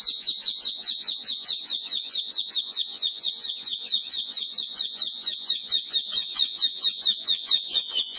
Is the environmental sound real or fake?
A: fake